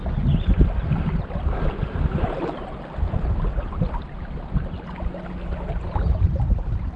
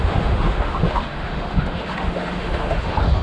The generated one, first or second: second